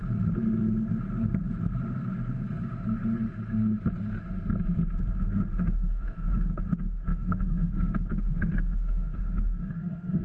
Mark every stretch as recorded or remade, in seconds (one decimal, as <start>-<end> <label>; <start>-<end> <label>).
0.0-5.2 recorded; 5.2-10.2 remade